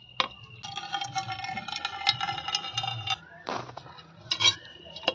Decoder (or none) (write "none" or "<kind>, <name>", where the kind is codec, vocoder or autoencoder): none